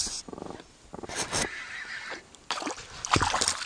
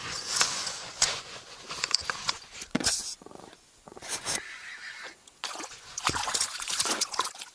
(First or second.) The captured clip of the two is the first